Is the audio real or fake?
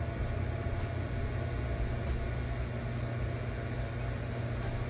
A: real